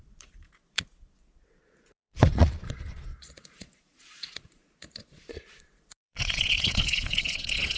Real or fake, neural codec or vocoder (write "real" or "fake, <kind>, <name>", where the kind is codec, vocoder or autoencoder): fake, vocoder, Vocos